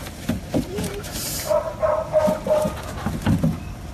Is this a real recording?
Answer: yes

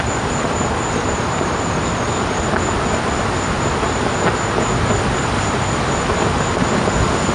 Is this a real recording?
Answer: yes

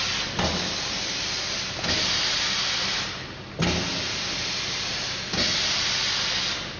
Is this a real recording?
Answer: yes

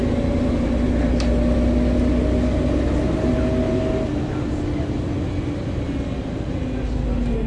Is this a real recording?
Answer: yes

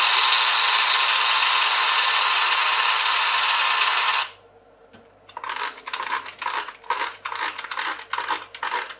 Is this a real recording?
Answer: yes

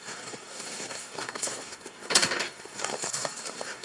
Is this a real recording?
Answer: no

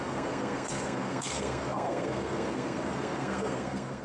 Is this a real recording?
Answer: no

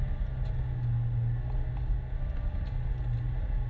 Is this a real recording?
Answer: yes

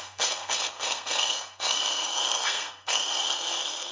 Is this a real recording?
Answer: no